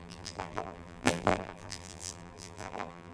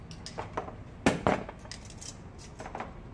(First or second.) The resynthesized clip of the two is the first